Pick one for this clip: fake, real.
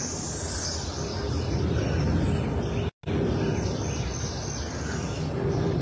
real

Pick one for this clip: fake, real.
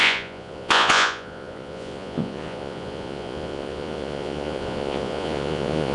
fake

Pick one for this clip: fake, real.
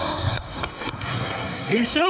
fake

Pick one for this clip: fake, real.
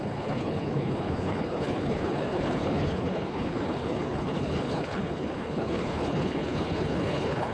fake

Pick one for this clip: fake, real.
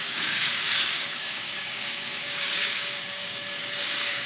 fake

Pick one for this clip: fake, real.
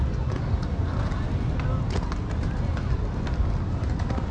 real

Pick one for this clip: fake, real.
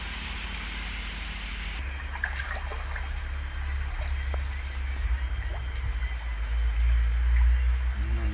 real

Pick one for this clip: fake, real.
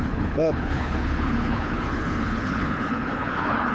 fake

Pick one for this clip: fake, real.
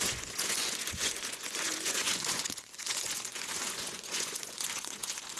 fake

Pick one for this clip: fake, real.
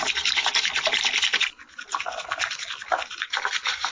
real